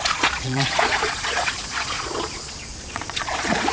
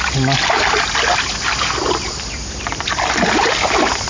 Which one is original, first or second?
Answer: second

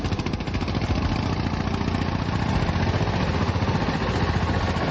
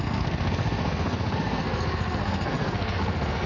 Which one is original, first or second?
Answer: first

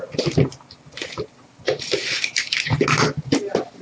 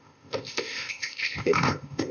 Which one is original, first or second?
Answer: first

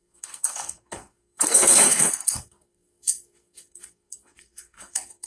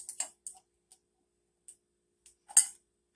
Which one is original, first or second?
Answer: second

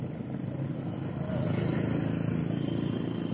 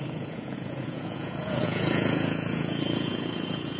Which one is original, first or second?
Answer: first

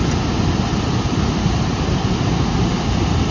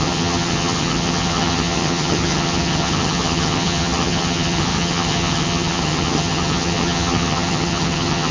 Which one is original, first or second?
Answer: first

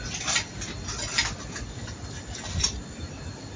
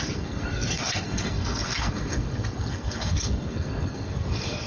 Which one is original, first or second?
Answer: first